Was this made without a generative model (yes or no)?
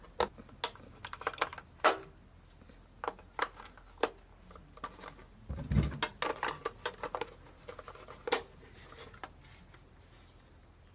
yes